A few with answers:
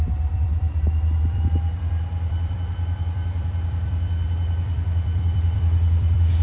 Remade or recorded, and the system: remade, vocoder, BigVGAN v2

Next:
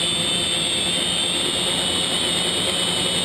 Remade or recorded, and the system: recorded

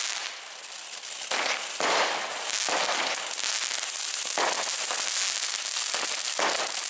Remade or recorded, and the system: recorded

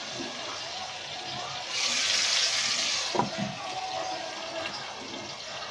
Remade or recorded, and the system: recorded